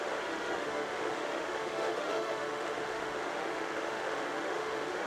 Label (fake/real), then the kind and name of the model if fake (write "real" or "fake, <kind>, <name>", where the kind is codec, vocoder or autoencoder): fake, autoencoder, DAC-VAE